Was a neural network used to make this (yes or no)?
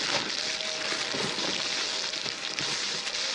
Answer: no